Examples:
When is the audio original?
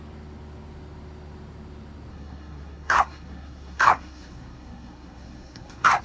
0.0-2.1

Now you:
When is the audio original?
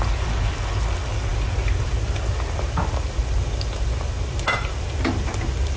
0.0-5.8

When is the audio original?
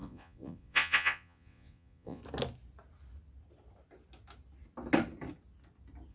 2.2-6.1